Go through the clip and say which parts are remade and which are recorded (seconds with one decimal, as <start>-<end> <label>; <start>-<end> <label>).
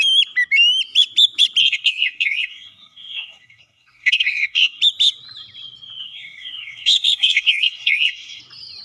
0.0-1.6 recorded; 1.6-4.8 remade; 4.8-6.0 recorded; 6.0-8.4 remade; 8.4-8.8 recorded